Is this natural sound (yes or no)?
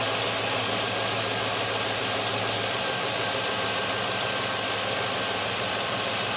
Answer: yes